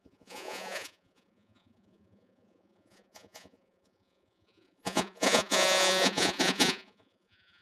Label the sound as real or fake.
fake